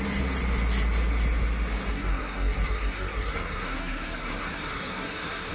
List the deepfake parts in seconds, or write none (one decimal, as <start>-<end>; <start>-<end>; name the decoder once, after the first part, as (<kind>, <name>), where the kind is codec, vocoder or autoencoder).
1.9-5.5 (codec, SNAC)